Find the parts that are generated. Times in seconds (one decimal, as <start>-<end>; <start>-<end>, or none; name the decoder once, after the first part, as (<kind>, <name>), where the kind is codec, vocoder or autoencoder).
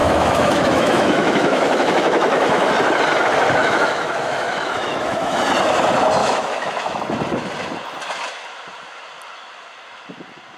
0.0-2.7 (autoencoder, DAC-VAE); 3.6-5.4; 6.2-7.0